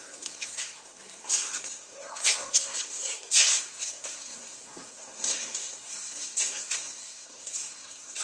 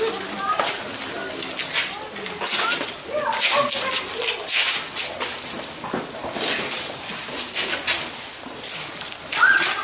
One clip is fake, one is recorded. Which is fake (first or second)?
first